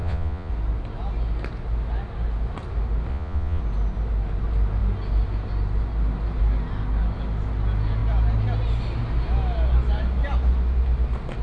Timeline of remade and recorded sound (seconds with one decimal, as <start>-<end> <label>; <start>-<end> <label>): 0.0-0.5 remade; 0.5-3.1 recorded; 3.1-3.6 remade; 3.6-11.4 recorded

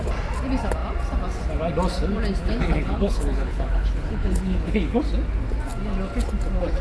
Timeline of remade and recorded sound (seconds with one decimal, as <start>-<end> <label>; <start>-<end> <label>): 0.0-2.4 recorded; 2.4-5.0 remade; 5.0-6.8 recorded

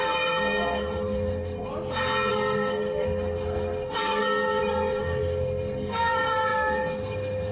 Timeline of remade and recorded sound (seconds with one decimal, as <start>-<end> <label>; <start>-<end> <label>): 0.0-1.7 remade; 1.7-2.3 recorded; 2.3-7.5 remade